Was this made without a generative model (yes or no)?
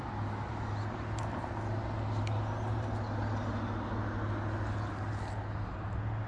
yes